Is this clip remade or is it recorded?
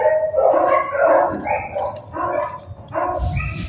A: recorded